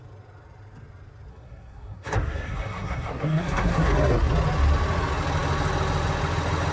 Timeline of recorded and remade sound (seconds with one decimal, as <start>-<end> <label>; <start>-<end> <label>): 0.0-1.3 recorded; 1.3-4.3 remade; 4.3-6.7 recorded